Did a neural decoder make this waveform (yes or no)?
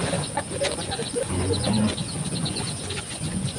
yes